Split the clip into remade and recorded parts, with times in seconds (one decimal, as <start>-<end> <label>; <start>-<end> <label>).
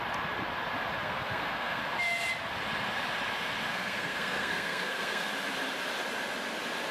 0.0-1.0 recorded; 1.0-1.8 remade; 1.8-3.7 recorded; 3.7-5.3 remade; 5.3-6.9 recorded